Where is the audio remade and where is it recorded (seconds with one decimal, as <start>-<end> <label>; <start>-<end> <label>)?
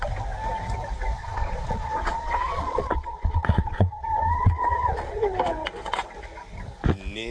0.0-1.2 recorded; 1.2-5.1 remade; 5.1-7.3 recorded